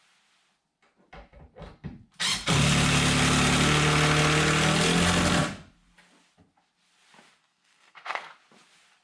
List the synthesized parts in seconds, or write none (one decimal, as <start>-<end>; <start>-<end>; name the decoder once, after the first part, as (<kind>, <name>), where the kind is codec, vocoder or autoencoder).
7.4-8.3 (codec, SNAC)